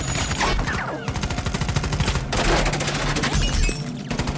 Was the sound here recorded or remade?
recorded